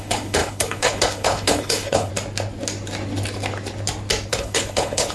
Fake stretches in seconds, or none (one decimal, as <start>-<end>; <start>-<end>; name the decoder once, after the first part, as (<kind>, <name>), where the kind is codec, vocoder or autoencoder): 0.0-2.1 (codec, HILCodec); 4.3-5.1